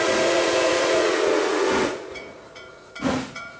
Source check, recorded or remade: remade